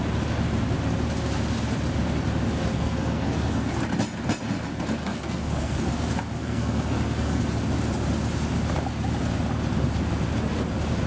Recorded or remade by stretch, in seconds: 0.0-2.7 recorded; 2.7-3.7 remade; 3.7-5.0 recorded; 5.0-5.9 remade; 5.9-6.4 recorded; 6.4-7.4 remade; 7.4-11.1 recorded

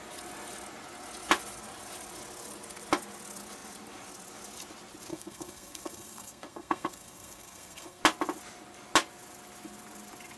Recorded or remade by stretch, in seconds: 0.0-5.1 recorded; 5.1-8.0 remade; 8.0-10.4 recorded

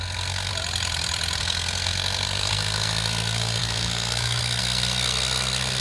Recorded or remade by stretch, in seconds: 0.0-0.5 remade; 0.5-1.4 recorded; 1.4-5.8 remade

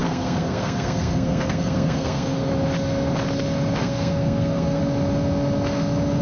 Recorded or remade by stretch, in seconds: 0.0-2.5 remade; 2.5-3.8 recorded; 3.8-4.8 remade; 4.8-6.2 recorded

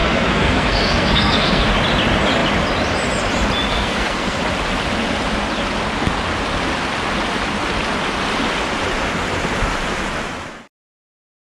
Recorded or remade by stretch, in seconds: 0.0-1.7 remade; 1.7-3.7 recorded; 3.7-4.4 remade; 4.4-11.4 recorded

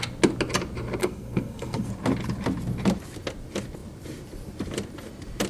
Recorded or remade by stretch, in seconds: 0.0-1.0 recorded; 1.0-1.9 remade; 1.9-5.5 recorded